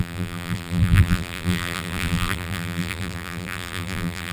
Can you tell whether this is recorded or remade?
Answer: remade